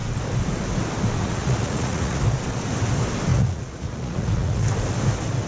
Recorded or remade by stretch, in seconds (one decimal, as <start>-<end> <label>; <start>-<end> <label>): 0.0-1.2 recorded; 1.2-2.2 remade; 2.2-3.3 recorded; 3.3-4.7 remade; 4.7-5.5 recorded

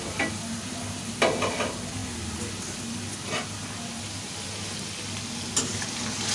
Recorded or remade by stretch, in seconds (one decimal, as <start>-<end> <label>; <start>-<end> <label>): 0.0-6.3 recorded

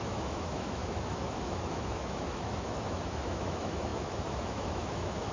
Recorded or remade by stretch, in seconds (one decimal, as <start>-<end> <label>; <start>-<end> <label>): 0.0-5.3 remade

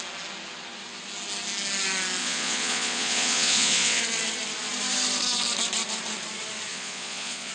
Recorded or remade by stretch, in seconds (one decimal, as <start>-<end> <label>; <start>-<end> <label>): 0.0-2.2 recorded; 2.2-4.0 remade; 4.0-6.7 recorded; 6.7-7.5 remade

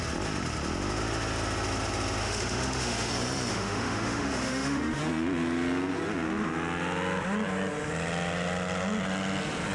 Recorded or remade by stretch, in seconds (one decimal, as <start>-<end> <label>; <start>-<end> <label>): 0.0-2.2 recorded; 2.2-3.1 remade; 3.1-3.5 recorded; 3.5-5.0 remade; 5.0-9.7 recorded

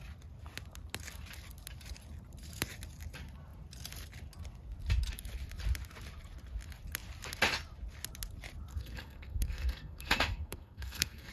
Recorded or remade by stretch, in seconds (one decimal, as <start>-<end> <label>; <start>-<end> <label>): 0.0-8.7 recorded; 8.7-11.3 remade